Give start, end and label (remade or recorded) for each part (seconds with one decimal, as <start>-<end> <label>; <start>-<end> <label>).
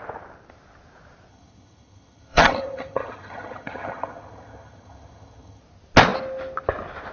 0.0-1.3 recorded; 1.3-5.6 remade; 5.6-7.1 recorded